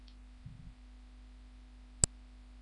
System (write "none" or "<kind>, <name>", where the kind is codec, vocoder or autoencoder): none